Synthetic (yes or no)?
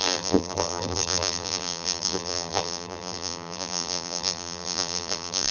yes